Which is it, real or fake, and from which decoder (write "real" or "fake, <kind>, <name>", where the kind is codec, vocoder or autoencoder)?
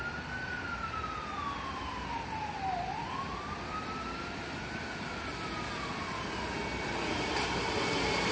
real